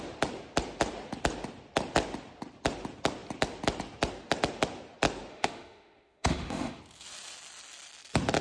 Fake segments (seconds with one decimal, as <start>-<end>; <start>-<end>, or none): 5.3-6.8